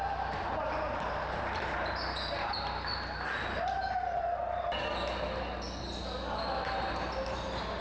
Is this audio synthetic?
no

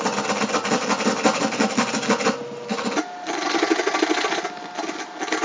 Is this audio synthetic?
no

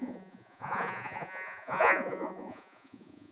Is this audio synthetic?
yes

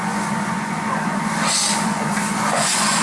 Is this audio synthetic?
yes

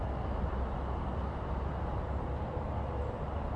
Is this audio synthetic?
no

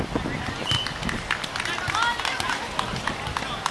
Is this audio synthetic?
no